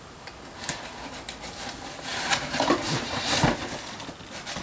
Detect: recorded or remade recorded